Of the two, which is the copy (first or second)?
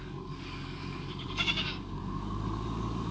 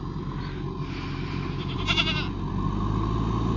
first